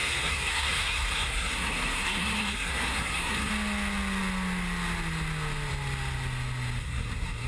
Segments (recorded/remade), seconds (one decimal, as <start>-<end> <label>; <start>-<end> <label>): 0.0-3.5 remade; 3.5-6.8 recorded; 6.8-7.5 remade